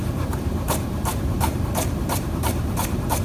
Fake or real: fake